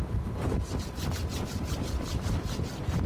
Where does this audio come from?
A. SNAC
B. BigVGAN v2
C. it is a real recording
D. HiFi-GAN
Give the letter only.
B